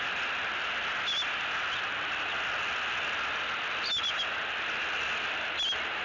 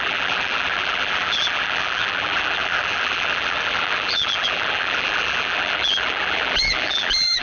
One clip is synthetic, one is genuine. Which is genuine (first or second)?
first